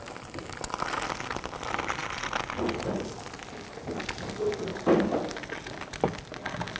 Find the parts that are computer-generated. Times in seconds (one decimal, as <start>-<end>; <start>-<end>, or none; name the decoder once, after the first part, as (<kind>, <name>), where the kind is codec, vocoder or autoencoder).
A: none